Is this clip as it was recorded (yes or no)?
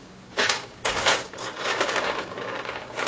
no